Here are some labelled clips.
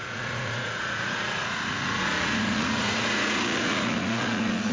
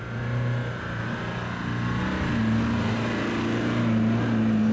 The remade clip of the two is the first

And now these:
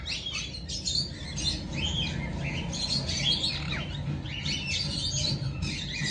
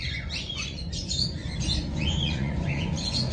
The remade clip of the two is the second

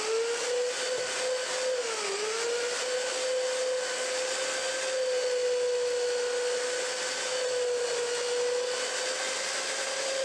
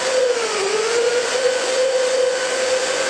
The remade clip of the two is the second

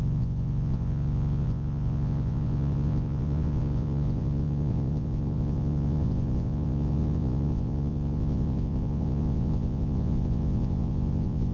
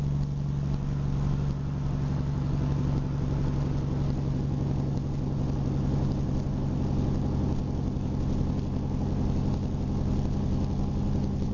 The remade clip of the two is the first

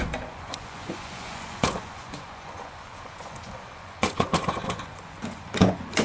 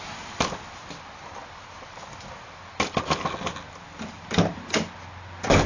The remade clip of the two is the first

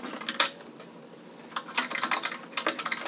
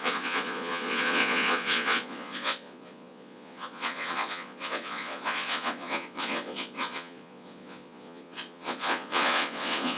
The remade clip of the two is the second